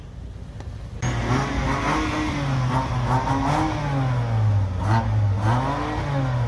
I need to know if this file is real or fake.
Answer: real